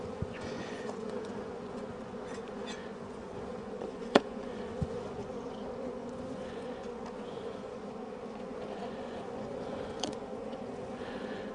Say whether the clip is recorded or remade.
remade